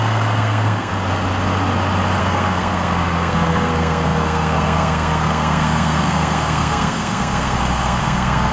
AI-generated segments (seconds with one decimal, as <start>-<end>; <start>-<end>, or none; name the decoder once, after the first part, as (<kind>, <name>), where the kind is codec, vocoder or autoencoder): 0.0-0.9 (codec, SNAC); 2.2-8.5